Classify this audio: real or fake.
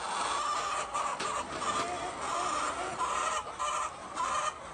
real